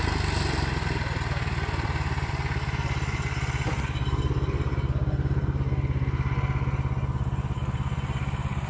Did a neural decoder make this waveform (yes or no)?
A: no